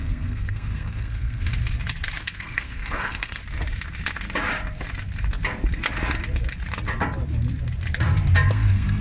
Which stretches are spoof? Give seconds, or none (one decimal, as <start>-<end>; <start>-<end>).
0.0-1.5; 2.2-3.4; 8.5-9.0